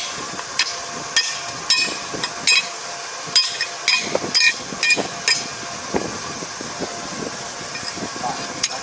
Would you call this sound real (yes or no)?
yes